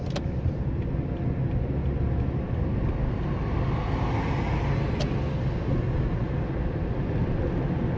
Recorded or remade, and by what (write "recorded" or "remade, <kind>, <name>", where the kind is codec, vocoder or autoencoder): recorded